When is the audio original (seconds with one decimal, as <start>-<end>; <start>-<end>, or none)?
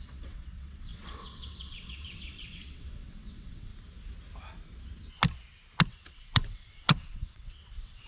3.7-5.9